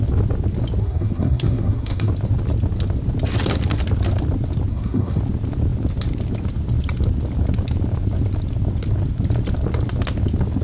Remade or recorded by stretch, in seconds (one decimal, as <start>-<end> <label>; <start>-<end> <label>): 0.0-0.8 recorded; 0.8-2.1 remade; 2.1-4.7 recorded; 4.7-5.2 remade; 5.2-10.6 recorded